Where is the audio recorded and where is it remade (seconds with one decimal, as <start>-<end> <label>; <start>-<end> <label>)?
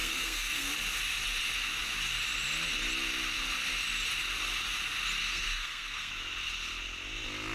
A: 0.0-0.7 remade; 0.7-5.2 recorded; 5.2-6.1 remade; 6.1-7.5 recorded